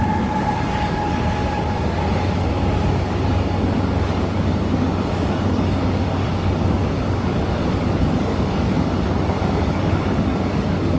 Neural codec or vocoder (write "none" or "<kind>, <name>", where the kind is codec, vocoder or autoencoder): codec, DAC